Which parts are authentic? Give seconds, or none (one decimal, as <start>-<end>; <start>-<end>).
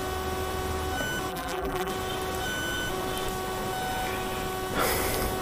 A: 0.0-1.3; 1.9-5.4